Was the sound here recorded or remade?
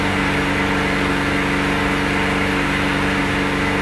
recorded